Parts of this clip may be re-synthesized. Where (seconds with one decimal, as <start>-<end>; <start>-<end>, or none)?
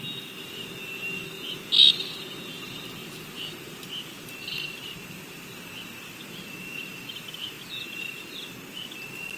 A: 3.0-5.7